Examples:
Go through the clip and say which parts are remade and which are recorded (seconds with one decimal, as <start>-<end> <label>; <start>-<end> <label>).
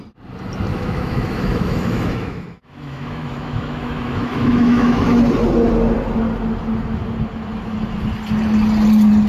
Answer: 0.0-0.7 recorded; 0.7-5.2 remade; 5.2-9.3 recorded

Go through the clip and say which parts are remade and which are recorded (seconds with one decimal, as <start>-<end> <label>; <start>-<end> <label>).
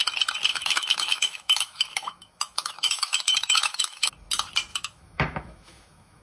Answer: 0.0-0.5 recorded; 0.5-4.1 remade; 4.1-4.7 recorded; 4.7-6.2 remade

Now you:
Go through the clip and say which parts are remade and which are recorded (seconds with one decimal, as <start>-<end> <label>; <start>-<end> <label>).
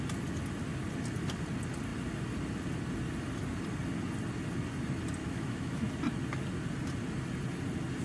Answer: 0.0-5.2 recorded; 5.2-5.9 remade; 5.9-8.0 recorded